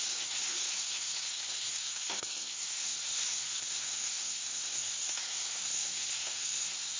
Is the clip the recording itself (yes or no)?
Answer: no